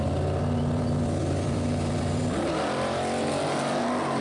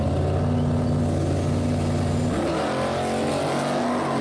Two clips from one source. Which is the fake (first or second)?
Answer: first